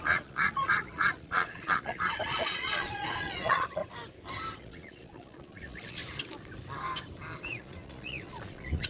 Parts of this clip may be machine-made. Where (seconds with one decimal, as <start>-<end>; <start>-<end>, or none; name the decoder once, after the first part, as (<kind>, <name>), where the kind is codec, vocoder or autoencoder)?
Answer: 0.0-3.8 (vocoder, Vocos); 4.6-6.0; 7.5-8.9